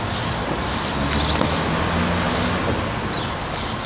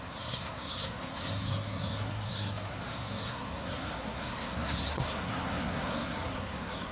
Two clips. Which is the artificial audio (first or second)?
second